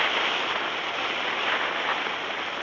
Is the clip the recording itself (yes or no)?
yes